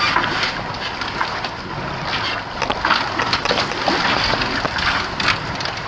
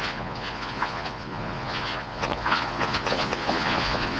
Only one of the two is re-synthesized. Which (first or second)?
second